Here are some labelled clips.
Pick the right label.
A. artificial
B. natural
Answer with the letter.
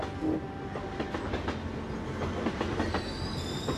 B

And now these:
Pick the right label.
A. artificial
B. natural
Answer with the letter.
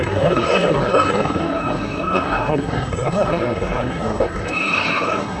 A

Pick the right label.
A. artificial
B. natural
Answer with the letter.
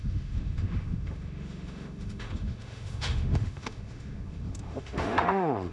A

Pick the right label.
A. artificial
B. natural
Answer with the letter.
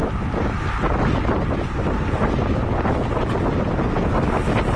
B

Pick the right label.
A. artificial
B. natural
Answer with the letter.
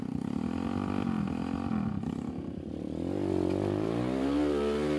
B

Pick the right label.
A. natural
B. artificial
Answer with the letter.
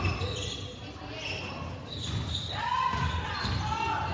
A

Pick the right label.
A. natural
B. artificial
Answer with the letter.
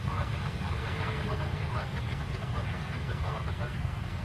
B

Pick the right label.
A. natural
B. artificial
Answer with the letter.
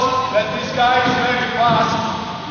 A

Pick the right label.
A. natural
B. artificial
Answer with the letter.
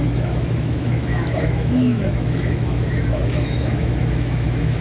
B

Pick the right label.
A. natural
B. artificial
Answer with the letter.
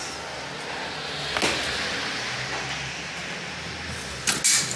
A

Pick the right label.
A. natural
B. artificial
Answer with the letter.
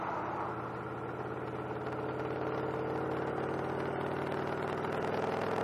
A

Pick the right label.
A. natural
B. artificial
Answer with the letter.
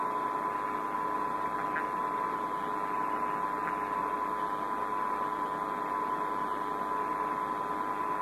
A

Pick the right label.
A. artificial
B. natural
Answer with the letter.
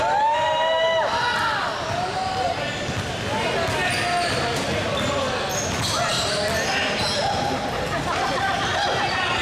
B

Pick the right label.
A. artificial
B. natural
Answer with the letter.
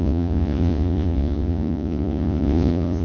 A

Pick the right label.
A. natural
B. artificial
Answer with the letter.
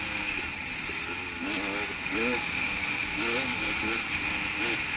A